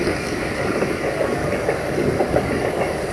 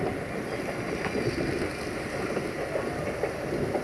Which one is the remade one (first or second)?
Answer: first